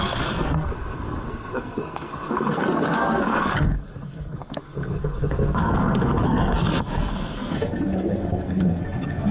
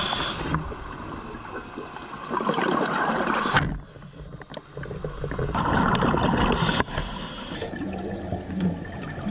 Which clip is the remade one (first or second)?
first